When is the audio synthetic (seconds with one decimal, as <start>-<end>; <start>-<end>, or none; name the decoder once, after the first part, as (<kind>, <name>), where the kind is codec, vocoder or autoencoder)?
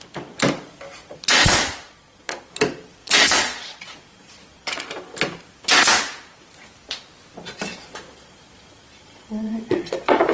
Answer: 1.0-2.5 (vocoder, Vocos); 3.0-4.8; 7.7-10.3